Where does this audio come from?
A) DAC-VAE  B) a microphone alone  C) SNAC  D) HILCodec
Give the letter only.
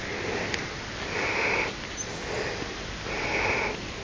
B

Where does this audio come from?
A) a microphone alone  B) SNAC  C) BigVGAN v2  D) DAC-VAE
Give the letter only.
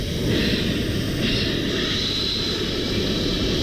A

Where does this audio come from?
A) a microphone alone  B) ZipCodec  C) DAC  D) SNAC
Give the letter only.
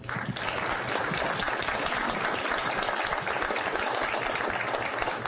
A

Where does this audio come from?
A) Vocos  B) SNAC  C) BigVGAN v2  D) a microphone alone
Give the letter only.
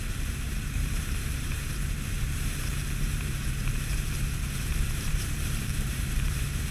C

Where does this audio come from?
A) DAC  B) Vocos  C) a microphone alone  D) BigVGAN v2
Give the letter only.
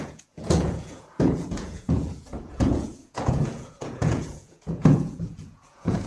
B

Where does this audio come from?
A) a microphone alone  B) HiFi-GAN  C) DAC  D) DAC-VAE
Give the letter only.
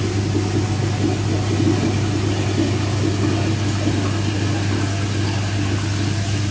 A